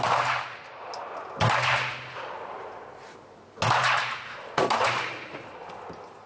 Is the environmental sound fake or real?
real